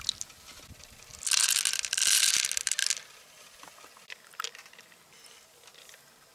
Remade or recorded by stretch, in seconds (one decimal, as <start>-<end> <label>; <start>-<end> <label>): 0.0-6.3 recorded